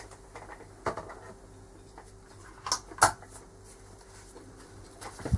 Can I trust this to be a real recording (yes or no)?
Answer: yes